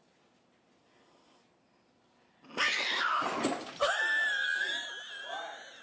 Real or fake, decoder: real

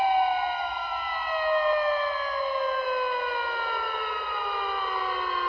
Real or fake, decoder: real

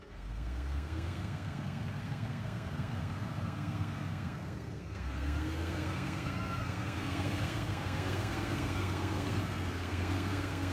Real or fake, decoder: fake, codec, SNAC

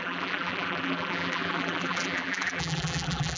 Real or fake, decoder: fake, vocoder, BigVGAN v2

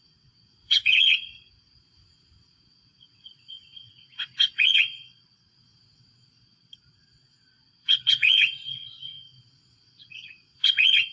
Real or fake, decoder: fake, vocoder, WaveNeXt